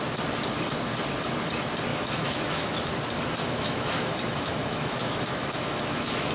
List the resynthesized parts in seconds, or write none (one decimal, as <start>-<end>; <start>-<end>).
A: 1.9-2.9; 3.4-6.3